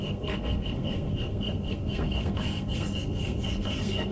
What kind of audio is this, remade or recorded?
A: remade